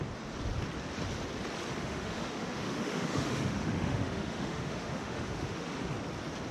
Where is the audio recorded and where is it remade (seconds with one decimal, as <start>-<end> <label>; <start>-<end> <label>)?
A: 0.0-1.8 recorded; 1.8-5.7 remade; 5.7-6.5 recorded